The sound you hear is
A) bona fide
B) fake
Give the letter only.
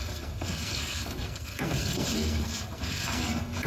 B